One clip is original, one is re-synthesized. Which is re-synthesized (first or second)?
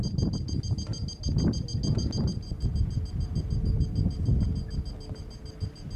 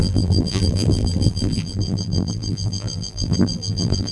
second